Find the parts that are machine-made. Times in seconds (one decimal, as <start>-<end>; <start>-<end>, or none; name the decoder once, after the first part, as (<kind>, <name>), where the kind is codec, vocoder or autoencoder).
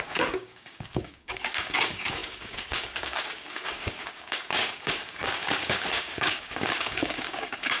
0.0-7.8 (codec, DAC)